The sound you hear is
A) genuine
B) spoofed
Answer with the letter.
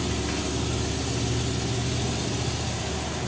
A